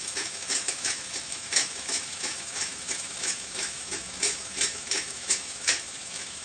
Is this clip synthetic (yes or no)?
yes